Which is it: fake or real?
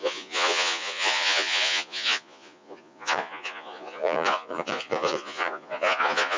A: fake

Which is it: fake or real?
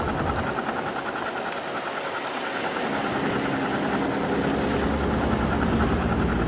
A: real